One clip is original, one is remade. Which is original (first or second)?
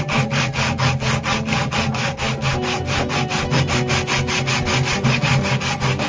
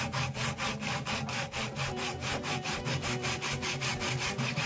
first